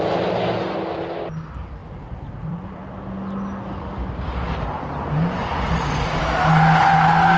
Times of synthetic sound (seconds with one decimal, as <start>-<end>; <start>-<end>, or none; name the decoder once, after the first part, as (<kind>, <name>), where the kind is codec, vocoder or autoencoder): 1.8-2.8 (vocoder, Vocos); 5.4-6.2